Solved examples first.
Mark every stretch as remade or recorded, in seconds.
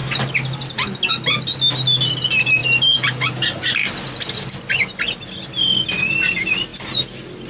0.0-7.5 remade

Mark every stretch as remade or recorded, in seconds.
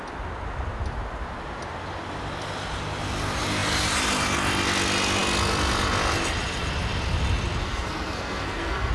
0.0-7.6 recorded; 7.6-8.9 remade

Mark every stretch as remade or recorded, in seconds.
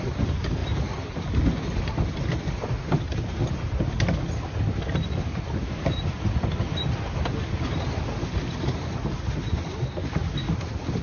0.0-11.0 recorded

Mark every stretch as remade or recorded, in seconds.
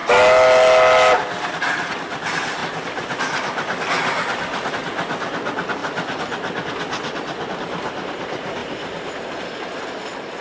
0.0-10.4 recorded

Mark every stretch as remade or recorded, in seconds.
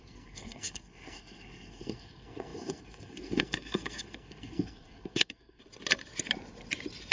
0.0-5.6 remade; 5.6-7.1 recorded